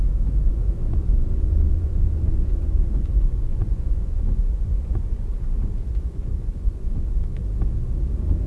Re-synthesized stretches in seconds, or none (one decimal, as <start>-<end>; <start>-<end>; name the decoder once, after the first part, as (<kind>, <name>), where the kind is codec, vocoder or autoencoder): 0.5-5.2 (vocoder, Vocos); 5.9-7.4